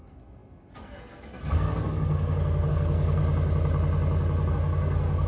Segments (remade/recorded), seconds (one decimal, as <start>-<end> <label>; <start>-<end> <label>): 0.0-3.2 remade; 3.2-4.5 recorded; 4.5-5.3 remade